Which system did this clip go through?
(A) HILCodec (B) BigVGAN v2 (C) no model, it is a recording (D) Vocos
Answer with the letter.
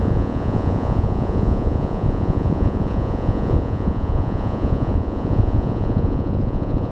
D